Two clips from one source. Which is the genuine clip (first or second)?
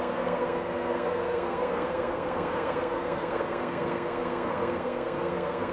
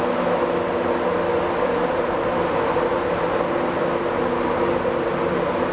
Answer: second